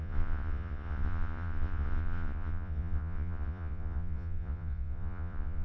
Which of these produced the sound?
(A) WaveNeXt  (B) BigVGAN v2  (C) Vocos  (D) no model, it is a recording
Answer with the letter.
C